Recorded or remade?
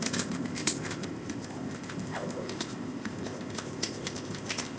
remade